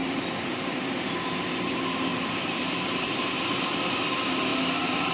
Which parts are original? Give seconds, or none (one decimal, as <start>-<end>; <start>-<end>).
1.1-2.1; 3.4-5.1